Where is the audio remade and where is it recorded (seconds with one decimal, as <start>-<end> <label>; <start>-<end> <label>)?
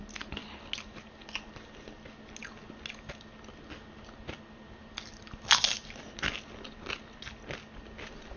0.0-8.4 recorded